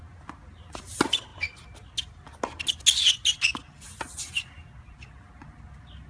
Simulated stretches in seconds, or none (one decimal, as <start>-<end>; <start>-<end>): none